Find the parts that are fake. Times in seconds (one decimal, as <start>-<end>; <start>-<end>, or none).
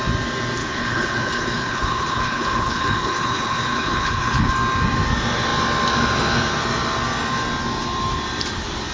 0.6-4.5